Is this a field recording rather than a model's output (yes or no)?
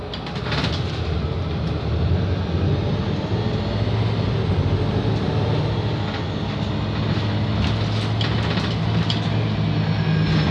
yes